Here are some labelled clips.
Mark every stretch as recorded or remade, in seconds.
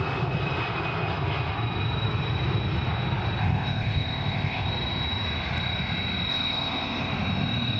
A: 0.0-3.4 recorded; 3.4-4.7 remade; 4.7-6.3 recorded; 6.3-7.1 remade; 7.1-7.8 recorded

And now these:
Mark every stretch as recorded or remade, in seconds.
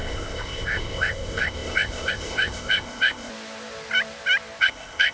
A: 0.0-3.3 remade; 3.3-4.6 recorded; 4.6-5.1 remade